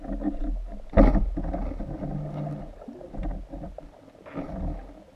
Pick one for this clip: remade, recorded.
recorded